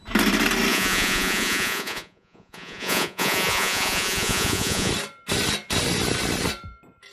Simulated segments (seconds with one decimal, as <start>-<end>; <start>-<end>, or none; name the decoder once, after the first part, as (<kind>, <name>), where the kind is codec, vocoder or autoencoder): 0.7-4.9 (vocoder, Vocos)